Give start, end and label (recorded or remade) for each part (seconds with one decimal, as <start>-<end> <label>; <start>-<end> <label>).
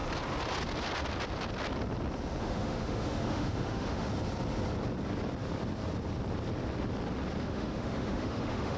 0.0-2.4 recorded; 2.4-4.1 remade; 4.1-7.4 recorded; 7.4-8.8 remade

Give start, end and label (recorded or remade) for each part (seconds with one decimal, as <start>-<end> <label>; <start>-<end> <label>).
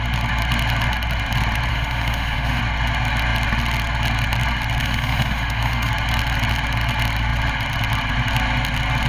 0.0-1.7 recorded; 1.7-2.6 remade; 2.6-4.8 recorded; 4.8-5.9 remade; 5.9-9.1 recorded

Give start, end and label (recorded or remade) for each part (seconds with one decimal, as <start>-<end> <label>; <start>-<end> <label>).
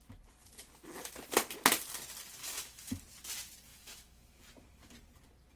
0.0-2.4 recorded; 2.4-3.0 remade; 3.0-3.7 recorded; 3.7-4.4 remade; 4.4-5.6 recorded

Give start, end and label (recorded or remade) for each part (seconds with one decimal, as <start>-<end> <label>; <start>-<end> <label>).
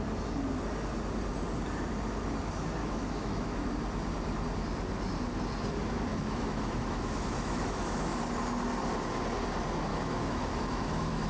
0.0-2.8 recorded; 2.8-3.7 remade; 3.7-6.1 recorded; 6.1-8.2 remade; 8.2-9.9 recorded; 9.9-11.3 remade